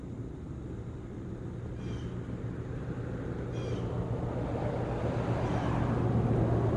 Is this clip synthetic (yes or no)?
no